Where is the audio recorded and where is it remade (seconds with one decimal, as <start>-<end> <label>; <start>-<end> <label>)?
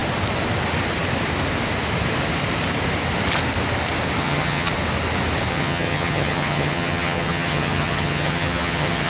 0.0-4.2 recorded; 4.2-4.7 remade; 4.7-5.5 recorded; 5.5-9.1 remade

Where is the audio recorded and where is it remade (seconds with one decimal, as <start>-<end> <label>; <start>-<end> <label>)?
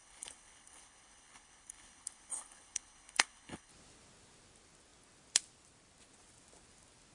0.0-3.7 remade; 3.7-7.1 recorded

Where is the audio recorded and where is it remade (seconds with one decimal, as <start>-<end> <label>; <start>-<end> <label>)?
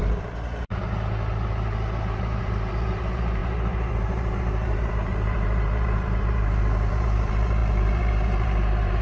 0.0-9.0 remade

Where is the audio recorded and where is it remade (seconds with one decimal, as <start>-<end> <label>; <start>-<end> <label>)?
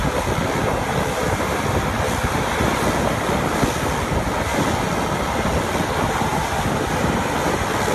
0.0-7.9 recorded